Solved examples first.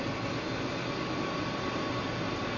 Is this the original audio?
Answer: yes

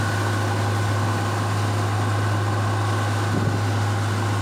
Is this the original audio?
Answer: yes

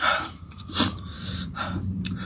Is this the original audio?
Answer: no